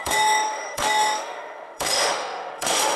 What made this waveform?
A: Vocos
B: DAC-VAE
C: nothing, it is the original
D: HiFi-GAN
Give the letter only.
B